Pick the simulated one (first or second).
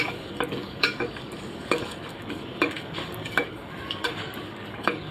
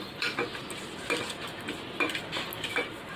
first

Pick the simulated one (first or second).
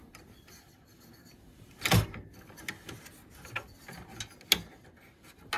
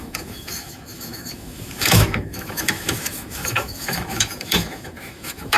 second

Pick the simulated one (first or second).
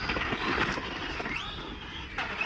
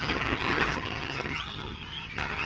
second